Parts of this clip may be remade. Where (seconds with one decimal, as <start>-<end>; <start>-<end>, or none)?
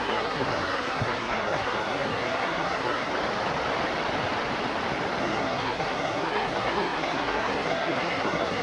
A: 0.0-3.1; 5.2-8.6